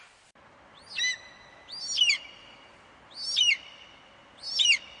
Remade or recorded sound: recorded